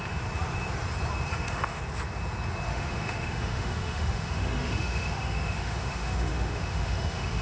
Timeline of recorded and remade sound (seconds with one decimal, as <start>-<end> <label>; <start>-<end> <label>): 0.0-1.3 recorded; 1.3-1.8 remade; 1.8-2.7 recorded; 2.7-7.4 remade

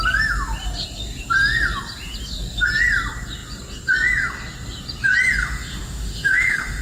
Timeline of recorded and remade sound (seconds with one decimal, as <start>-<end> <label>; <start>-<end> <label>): 0.0-5.4 recorded; 5.4-6.8 remade

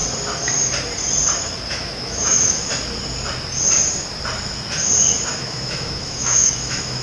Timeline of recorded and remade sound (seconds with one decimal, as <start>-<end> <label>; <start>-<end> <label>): 0.0-1.7 recorded; 1.7-2.7 remade; 2.7-5.3 recorded; 5.3-7.0 remade

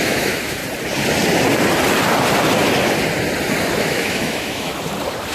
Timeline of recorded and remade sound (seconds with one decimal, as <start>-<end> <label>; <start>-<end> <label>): 0.0-0.6 remade; 0.6-3.8 recorded; 3.8-4.7 remade; 4.7-5.3 recorded

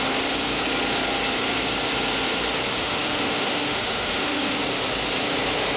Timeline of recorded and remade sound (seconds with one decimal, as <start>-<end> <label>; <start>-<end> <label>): 0.0-2.8 recorded; 2.8-4.6 remade; 4.6-5.8 recorded